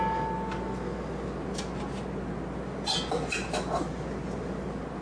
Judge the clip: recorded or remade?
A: recorded